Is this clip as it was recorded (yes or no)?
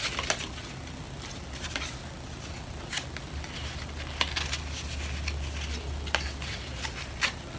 yes